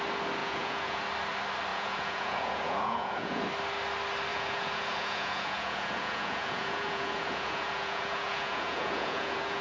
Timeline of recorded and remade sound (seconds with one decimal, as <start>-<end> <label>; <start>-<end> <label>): 0.0-0.4 recorded; 0.4-1.0 remade; 1.0-1.7 recorded; 1.7-3.4 remade; 3.4-4.3 recorded; 4.3-9.6 remade

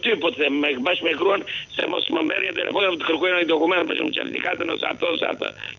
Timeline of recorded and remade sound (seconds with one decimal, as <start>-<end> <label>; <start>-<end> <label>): 0.0-1.8 recorded; 1.8-2.8 remade; 2.8-3.8 recorded; 3.8-5.8 remade

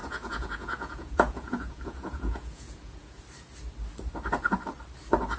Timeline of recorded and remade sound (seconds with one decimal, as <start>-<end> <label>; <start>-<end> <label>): 0.0-3.2 remade; 3.2-5.4 recorded

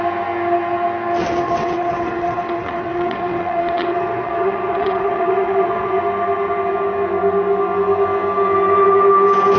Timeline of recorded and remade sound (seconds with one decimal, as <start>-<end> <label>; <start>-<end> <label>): 0.0-1.2 recorded; 1.2-6.0 remade; 6.0-9.6 recorded

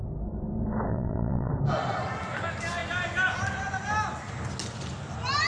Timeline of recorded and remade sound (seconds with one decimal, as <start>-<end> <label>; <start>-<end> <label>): 0.0-0.9 recorded; 0.9-1.5 remade; 1.5-5.5 recorded